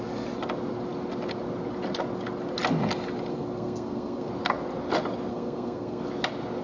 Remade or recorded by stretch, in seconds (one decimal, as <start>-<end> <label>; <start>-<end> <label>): 0.0-3.3 recorded; 3.3-4.3 remade; 4.3-5.3 recorded; 5.3-6.0 remade; 6.0-6.6 recorded